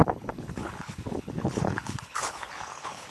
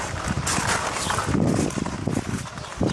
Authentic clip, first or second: second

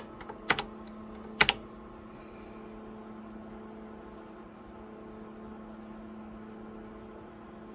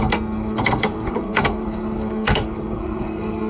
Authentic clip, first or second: first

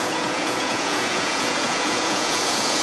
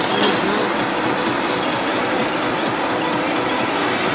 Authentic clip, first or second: second